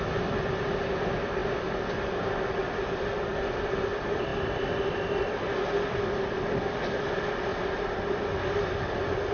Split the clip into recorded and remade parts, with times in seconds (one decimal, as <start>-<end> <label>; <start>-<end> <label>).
0.0-9.3 recorded